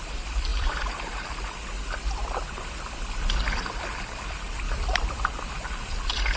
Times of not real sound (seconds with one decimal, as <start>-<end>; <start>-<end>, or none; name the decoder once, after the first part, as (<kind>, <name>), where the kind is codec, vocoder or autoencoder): 0.5-1.3 (vocoder, BigVGAN v2); 2.2-6.0